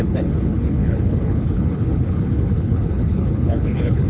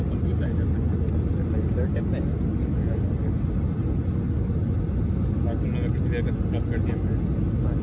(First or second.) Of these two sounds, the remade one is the first